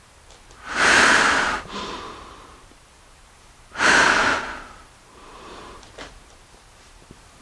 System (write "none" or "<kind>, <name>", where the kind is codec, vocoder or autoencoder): vocoder, BigVGAN v2